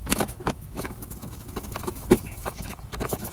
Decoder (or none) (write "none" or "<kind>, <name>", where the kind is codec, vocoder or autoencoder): autoencoder, DAC-VAE